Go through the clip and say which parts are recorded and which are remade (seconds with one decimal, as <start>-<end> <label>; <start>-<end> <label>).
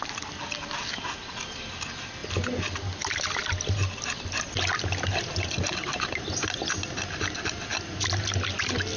0.0-9.0 recorded